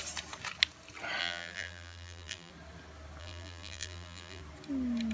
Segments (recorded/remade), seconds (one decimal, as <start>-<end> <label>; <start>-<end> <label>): 0.0-1.2 recorded; 1.2-2.5 remade; 2.5-3.2 recorded; 3.2-4.4 remade; 4.4-5.1 recorded